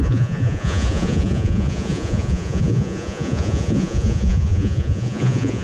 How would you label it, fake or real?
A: fake